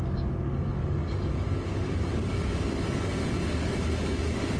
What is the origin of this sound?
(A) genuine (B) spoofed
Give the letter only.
B